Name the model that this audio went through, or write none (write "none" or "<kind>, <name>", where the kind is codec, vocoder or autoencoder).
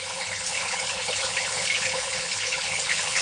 codec, HILCodec